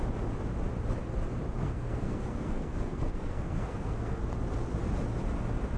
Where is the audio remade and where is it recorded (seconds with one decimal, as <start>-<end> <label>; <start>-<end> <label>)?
0.0-1.6 recorded; 1.6-4.2 remade; 4.2-5.8 recorded